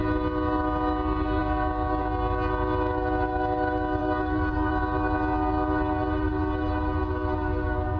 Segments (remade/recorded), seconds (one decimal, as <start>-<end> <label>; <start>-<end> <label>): 0.0-4.0 recorded; 4.0-4.7 remade; 4.7-8.0 recorded